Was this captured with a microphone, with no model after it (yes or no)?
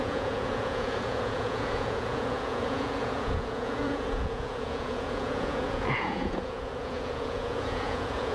no